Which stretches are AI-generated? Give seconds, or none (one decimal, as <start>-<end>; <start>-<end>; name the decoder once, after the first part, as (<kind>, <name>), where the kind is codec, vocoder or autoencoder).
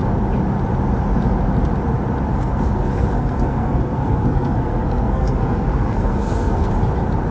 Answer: 2.3-6.7 (codec, SNAC)